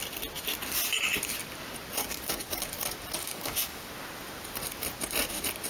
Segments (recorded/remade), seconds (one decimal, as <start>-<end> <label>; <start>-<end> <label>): 0.0-2.0 recorded; 2.0-2.5 remade; 2.5-3.2 recorded; 3.2-3.9 remade; 3.9-5.7 recorded